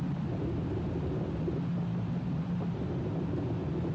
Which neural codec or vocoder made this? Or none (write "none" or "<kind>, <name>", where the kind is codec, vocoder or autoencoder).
none